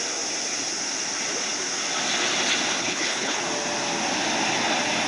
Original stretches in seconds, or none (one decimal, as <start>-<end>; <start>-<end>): 0.0-2.8; 3.4-5.1